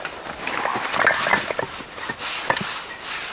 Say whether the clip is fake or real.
real